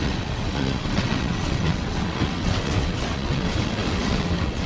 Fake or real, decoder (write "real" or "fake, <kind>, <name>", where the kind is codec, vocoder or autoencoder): fake, vocoder, WaveNeXt